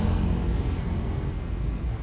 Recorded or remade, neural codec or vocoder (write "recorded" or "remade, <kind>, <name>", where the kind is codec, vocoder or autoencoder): remade, codec, SNAC